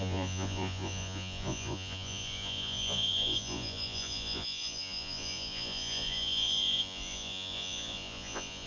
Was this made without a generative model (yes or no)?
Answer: no